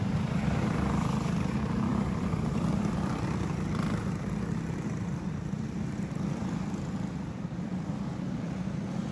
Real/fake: fake